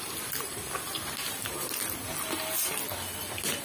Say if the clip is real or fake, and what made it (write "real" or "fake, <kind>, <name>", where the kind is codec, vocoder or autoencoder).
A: real